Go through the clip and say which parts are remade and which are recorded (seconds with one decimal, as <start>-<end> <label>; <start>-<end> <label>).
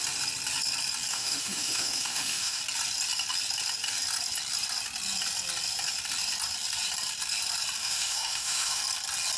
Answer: 0.0-1.1 recorded; 1.1-2.6 remade; 2.6-7.8 recorded; 7.8-8.8 remade; 8.8-9.4 recorded